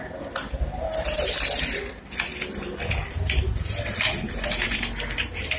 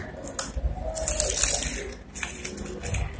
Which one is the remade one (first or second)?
first